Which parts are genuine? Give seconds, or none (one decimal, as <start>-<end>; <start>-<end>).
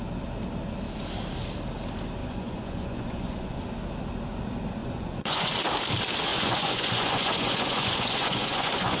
0.0-2.2; 3.6-4.8; 5.5-6.3